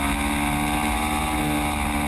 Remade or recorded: recorded